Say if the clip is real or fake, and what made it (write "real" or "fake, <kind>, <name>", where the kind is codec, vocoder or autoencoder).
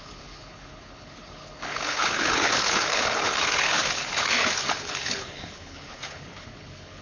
fake, codec, HILCodec